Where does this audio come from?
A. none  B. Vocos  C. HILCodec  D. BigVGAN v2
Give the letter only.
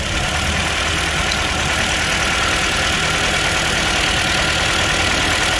A